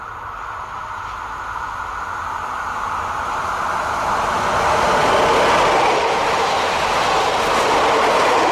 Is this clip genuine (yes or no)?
yes